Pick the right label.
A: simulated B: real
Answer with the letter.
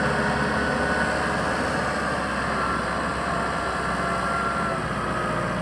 B